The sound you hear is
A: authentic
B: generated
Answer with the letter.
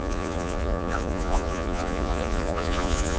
B